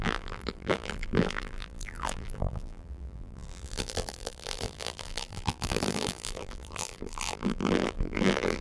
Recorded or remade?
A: remade